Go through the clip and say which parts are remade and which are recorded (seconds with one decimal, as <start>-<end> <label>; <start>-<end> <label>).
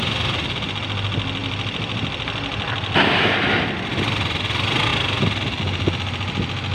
0.0-1.4 recorded; 1.4-4.4 remade; 4.4-6.7 recorded